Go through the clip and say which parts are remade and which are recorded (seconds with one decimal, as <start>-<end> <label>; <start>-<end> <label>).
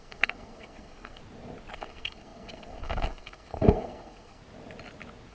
0.0-1.2 remade; 1.2-1.7 recorded; 1.7-4.4 remade; 4.4-5.3 recorded